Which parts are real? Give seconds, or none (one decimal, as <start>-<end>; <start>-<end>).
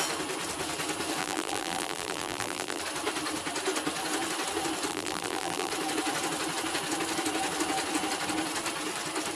0.0-1.2; 2.8-4.9; 5.7-9.4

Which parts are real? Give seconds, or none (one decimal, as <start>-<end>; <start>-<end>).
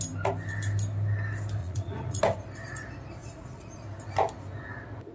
0.0-1.6; 2.2-3.2; 3.8-5.1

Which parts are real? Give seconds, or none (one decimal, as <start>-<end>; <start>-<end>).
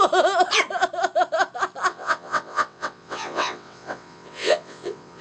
0.0-1.9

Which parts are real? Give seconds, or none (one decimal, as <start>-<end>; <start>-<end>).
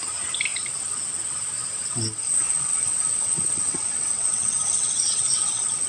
0.0-2.2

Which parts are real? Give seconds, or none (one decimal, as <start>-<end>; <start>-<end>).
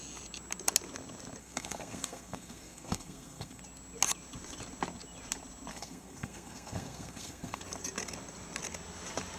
0.0-1.4; 3.6-5.7; 7.6-9.4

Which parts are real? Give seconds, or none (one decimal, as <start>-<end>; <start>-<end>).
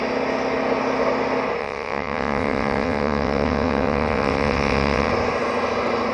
0.0-1.6; 5.1-6.1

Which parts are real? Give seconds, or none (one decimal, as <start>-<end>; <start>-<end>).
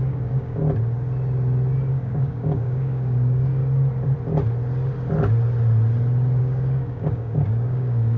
0.6-1.9; 3.6-6.4